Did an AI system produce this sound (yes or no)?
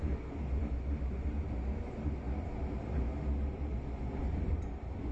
no